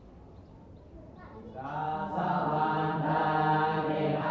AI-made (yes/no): yes